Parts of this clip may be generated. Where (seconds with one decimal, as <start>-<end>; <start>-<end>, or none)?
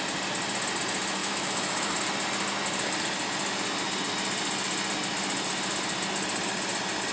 1.2-2.0